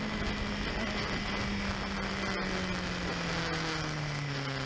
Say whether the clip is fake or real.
real